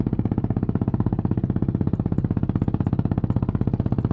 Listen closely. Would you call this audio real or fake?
real